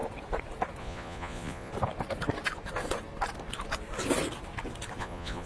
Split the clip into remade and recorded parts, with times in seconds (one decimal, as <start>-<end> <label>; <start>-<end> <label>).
0.0-0.8 recorded; 0.8-1.7 remade; 1.7-5.0 recorded; 5.0-5.5 remade